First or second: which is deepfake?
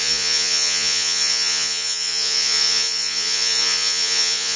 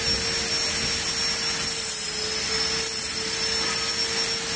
first